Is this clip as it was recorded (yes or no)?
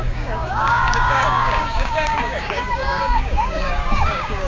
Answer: no